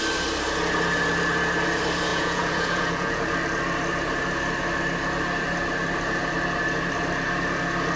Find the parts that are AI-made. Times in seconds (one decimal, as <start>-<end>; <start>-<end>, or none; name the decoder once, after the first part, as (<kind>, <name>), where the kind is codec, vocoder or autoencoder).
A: 2.1-3.2 (vocoder, Vocos)